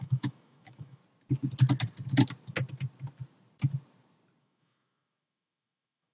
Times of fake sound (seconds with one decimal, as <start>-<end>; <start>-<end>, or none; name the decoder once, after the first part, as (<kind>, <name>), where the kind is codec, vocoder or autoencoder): 0.0-1.0 (autoencoder, DAC-VAE); 4.4-6.1